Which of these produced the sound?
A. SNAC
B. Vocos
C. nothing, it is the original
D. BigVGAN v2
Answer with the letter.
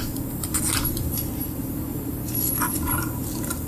C